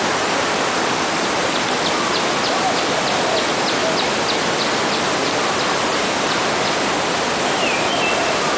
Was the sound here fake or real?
real